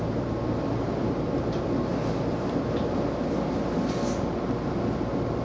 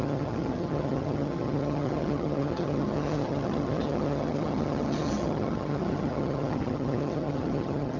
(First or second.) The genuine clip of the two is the first